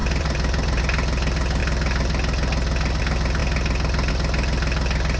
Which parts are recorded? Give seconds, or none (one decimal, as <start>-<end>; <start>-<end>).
0.8-5.2